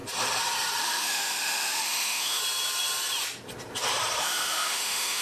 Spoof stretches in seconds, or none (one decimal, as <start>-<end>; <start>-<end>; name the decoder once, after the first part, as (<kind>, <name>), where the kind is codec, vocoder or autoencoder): 0.8-2.4 (autoencoder, DAC-VAE); 4.2-5.2